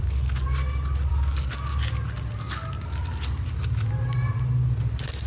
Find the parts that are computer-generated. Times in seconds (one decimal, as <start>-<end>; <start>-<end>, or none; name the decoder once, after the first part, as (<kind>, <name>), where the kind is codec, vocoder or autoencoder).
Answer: none